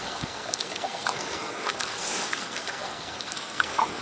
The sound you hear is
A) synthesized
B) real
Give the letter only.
A